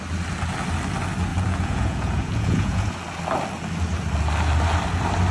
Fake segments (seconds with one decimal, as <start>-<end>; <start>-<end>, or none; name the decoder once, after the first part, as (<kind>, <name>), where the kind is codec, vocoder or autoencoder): 1.3-2.9 (vocoder, Vocos)